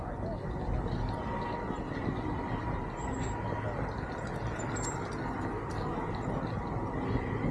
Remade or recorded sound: recorded